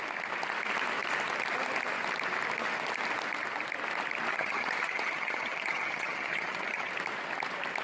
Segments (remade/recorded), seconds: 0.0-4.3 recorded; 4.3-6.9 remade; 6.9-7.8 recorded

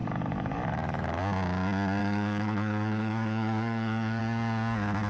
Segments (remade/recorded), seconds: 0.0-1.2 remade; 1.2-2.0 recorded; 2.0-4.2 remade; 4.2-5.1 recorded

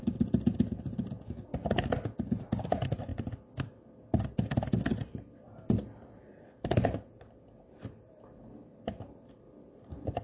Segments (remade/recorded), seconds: 0.0-10.2 recorded